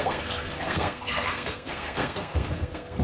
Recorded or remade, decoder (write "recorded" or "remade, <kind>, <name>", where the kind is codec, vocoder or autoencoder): remade, codec, SNAC